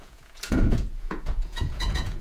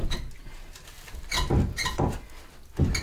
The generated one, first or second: first